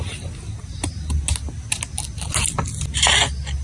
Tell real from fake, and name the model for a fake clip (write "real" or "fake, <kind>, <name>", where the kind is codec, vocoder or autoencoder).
real